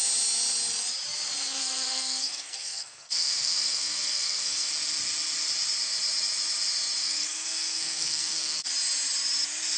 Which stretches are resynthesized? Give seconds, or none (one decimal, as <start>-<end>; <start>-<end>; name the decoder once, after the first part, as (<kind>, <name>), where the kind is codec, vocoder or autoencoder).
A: 1.6-4.7 (codec, SNAC); 7.0-8.7